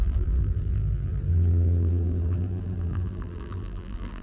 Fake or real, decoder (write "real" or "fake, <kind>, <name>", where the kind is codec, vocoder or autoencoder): fake, vocoder, BigVGAN v2